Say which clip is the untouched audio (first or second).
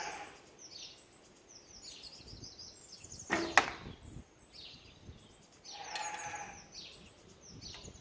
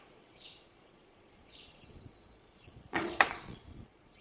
first